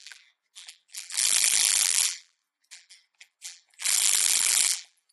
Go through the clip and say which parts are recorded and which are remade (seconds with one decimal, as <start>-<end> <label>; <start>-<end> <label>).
0.0-5.1 remade